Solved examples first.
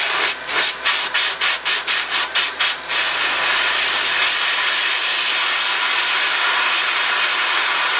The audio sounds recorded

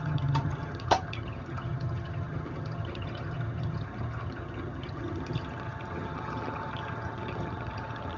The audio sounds remade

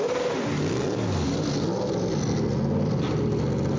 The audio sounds recorded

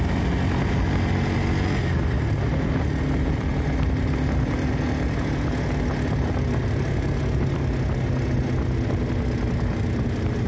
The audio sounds recorded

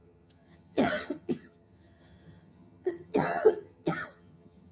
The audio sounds remade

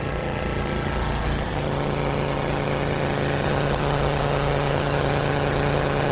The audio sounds remade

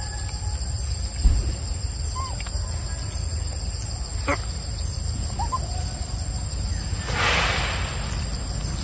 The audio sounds recorded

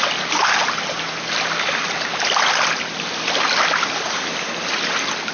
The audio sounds recorded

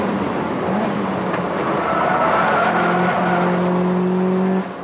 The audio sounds recorded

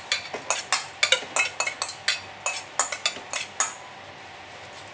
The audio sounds recorded